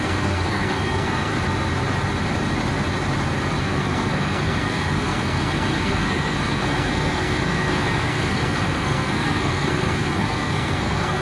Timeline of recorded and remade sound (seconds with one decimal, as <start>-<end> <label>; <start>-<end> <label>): 0.0-1.3 remade; 1.3-3.6 recorded; 3.6-11.2 remade